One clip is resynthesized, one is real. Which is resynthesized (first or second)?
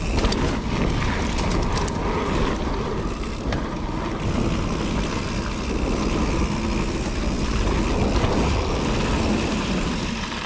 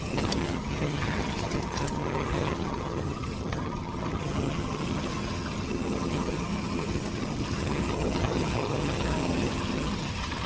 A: second